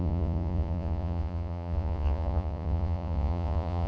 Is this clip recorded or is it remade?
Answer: remade